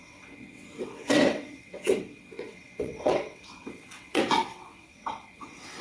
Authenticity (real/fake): fake